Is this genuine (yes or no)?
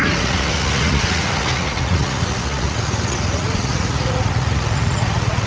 no